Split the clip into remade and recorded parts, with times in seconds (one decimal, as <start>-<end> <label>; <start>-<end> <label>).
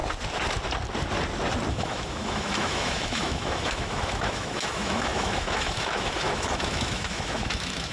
0.0-1.7 recorded; 1.7-7.9 remade